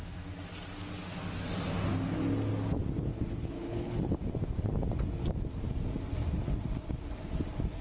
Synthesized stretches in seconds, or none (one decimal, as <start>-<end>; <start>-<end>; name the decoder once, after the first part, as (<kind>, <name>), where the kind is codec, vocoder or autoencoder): 3.1-4.2 (codec, HILCodec)